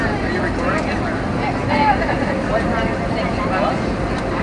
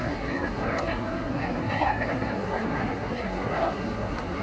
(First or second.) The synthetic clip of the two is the second